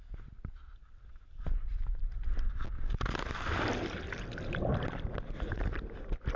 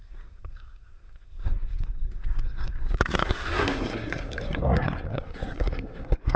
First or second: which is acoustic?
first